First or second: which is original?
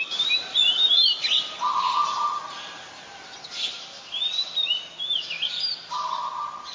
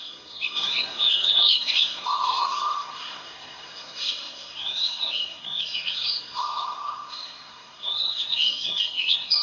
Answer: first